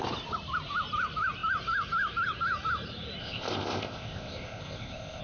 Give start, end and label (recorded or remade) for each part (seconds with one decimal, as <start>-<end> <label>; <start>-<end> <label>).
0.0-3.2 recorded; 3.2-5.2 remade